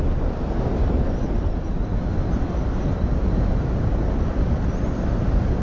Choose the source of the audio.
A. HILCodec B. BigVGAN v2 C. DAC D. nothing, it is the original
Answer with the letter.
D